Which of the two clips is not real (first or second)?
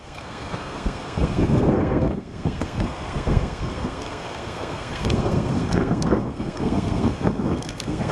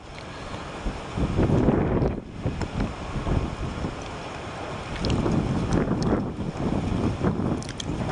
first